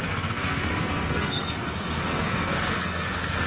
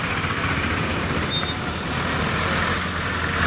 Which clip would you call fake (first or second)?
first